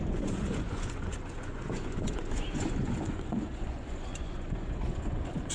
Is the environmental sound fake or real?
fake